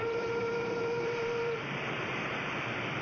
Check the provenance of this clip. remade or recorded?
remade